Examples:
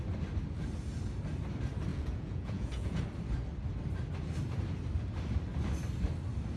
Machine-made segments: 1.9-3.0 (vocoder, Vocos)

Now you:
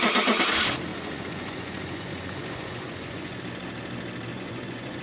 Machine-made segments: 0.9-3.4 (vocoder, Vocos); 4.3-5.0

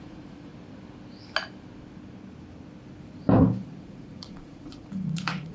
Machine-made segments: 0.0-0.5 (vocoder, Vocos); 3.8-5.5

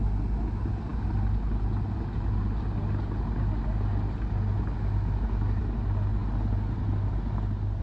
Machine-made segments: none